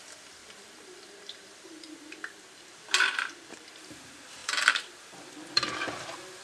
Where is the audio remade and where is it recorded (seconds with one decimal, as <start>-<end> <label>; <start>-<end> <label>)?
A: 0.0-6.4 remade